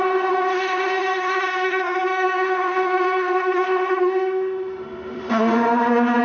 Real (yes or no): no